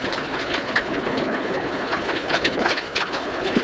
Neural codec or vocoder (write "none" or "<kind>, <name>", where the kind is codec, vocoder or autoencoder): codec, HILCodec